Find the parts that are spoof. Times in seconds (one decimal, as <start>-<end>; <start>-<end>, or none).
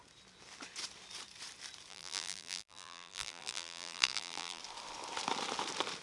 1.9-4.6